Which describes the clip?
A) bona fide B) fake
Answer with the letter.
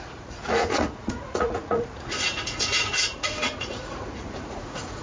B